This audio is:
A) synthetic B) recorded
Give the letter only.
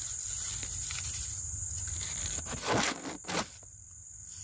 B